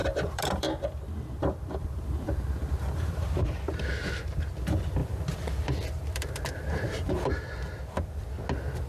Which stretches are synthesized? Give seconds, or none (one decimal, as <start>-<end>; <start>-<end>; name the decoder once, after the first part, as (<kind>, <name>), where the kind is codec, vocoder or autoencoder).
0.0-3.8 (vocoder, BigVGAN v2); 5.0-8.3